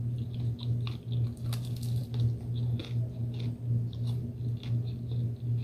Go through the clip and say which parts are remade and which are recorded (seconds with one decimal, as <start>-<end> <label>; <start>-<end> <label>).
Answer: 0.0-5.6 recorded